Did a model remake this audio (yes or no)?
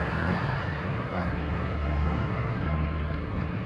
yes